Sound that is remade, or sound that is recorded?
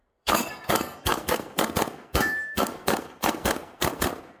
remade